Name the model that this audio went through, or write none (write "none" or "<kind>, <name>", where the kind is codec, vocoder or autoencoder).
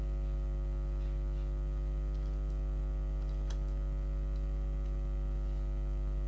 none